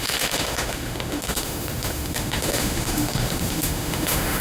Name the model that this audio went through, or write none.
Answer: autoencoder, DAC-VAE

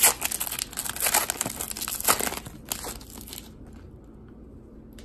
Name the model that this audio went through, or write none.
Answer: none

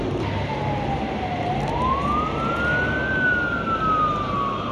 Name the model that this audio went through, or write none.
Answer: none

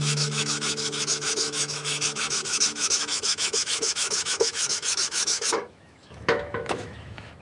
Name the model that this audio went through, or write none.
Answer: autoencoder, DAC-VAE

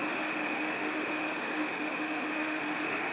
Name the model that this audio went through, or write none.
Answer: autoencoder, DAC-VAE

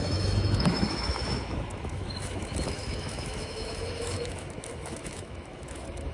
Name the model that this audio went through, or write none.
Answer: autoencoder, DAC-VAE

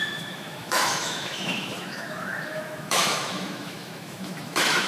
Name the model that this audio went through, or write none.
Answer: autoencoder, DAC-VAE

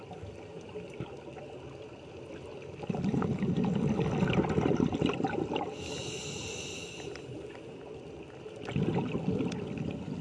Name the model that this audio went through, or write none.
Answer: none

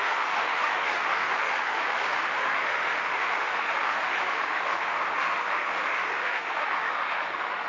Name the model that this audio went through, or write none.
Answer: autoencoder, DAC-VAE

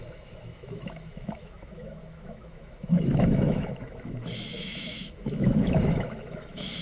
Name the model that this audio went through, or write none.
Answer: autoencoder, DAC-VAE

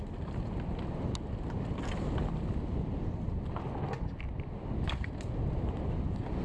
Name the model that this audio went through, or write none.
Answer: none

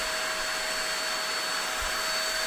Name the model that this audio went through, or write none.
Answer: none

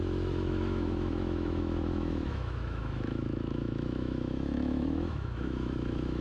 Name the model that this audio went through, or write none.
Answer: autoencoder, DAC-VAE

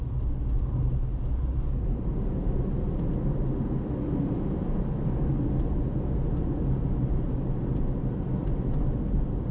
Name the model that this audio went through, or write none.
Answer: none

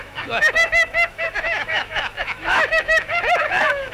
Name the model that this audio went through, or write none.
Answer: autoencoder, DAC-VAE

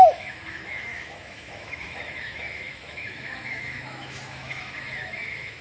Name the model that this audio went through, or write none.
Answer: autoencoder, DAC-VAE